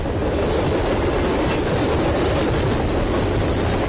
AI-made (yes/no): no